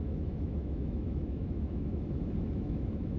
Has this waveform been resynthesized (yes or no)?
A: yes